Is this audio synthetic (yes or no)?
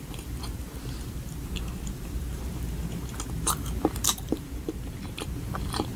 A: yes